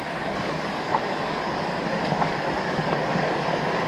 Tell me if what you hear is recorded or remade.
remade